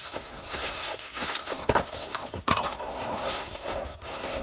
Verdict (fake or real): fake